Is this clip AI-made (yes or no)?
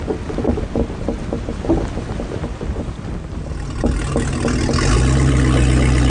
no